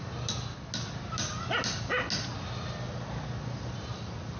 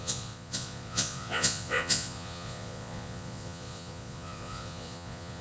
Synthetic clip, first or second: second